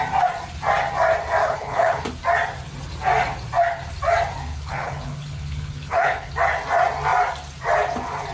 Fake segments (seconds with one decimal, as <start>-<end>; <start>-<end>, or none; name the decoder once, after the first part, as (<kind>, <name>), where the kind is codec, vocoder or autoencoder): 1.4-2.1 (codec, HILCodec); 4.5-6.3